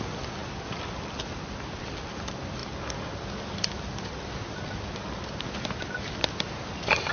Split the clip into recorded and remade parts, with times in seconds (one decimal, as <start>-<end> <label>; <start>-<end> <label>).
0.0-2.6 remade; 2.6-7.1 recorded